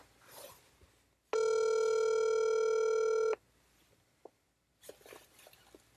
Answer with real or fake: real